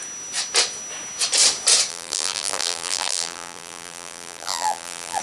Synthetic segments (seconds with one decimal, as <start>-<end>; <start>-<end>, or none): 1.9-5.2